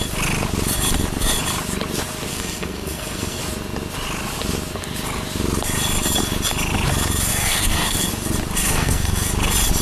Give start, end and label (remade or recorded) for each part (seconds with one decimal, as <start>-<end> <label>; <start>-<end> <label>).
0.0-2.3 recorded; 2.3-3.4 remade; 3.4-7.3 recorded; 7.3-8.1 remade; 8.1-8.6 recorded; 8.6-9.3 remade; 9.3-9.8 recorded

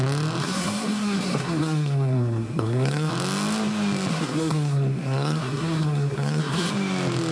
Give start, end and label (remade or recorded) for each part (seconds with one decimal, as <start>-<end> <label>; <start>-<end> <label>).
0.0-0.4 recorded; 0.4-3.1 remade; 3.1-4.1 recorded; 4.1-6.7 remade; 6.7-7.3 recorded

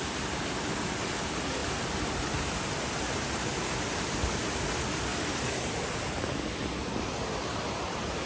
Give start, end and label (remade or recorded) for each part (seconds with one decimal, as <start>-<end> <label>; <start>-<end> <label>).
0.0-5.1 recorded; 5.1-5.7 remade; 5.7-8.3 recorded

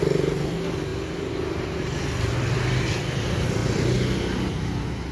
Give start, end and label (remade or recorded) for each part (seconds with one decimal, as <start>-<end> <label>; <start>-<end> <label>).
0.0-5.1 recorded

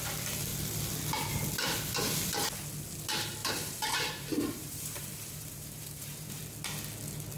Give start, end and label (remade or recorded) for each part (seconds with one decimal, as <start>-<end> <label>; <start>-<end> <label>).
0.0-3.4 recorded; 3.4-6.4 remade; 6.4-7.4 recorded

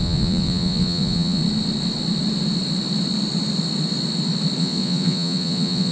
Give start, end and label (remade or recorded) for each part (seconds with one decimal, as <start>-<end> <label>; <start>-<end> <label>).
0.0-1.4 remade; 1.4-4.6 recorded; 4.6-5.9 remade

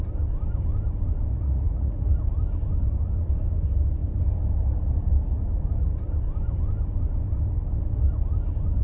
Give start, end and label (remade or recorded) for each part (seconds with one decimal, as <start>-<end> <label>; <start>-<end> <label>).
0.0-1.3 recorded; 1.3-2.1 remade; 2.1-8.8 recorded

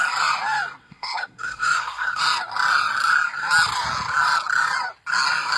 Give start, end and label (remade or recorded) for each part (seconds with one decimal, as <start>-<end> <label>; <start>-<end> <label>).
0.0-0.8 recorded; 0.8-2.2 remade; 2.2-5.6 recorded